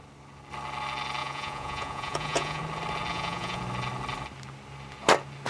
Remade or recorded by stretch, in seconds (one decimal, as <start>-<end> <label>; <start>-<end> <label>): 0.0-1.2 recorded; 1.2-2.6 remade; 2.6-3.1 recorded; 3.1-3.6 remade; 3.6-5.5 recorded